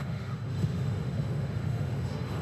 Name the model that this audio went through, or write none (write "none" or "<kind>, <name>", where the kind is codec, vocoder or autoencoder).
autoencoder, DAC-VAE